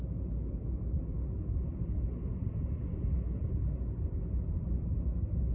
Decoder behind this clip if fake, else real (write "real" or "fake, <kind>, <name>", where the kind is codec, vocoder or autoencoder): real